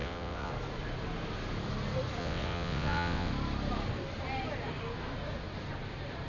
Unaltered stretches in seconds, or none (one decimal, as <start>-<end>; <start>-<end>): 0.5-2.2; 3.3-6.3